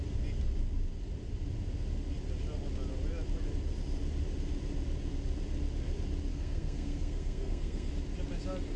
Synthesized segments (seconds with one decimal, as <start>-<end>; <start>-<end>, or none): 6.3-7.9